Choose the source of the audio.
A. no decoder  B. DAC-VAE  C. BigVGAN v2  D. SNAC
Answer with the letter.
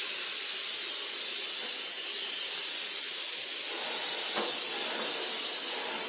A